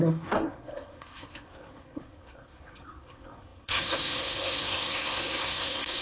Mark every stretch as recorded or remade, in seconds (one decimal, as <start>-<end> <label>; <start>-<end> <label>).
0.0-6.0 remade